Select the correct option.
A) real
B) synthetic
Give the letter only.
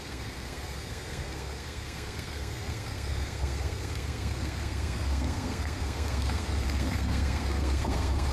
B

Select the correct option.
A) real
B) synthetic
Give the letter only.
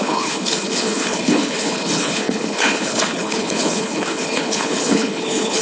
B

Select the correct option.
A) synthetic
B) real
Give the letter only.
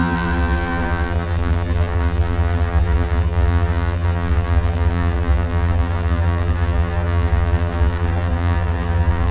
A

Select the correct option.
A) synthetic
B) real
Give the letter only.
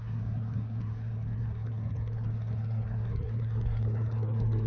A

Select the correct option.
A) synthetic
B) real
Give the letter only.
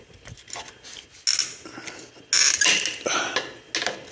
B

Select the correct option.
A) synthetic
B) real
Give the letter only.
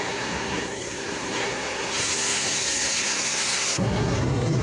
A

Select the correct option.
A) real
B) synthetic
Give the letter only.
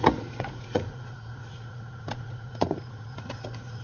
B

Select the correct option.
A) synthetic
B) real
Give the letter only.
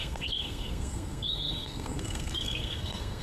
A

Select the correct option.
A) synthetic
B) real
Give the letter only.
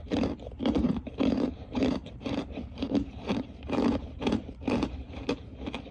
A